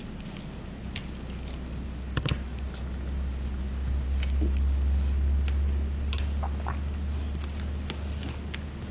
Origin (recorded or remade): recorded